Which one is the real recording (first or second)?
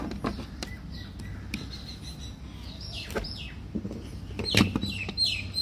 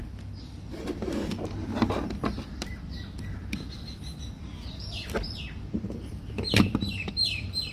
first